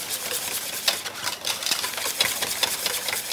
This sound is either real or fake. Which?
fake